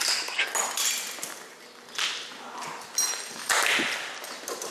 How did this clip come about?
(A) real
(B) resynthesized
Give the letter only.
A